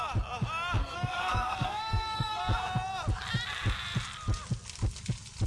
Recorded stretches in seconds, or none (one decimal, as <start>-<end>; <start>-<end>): 0.0-0.8; 2.4-5.5